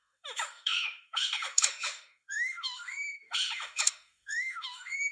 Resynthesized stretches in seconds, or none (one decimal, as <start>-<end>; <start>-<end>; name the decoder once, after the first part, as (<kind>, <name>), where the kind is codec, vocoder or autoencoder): 0.0-5.1 (autoencoder, DAC-VAE)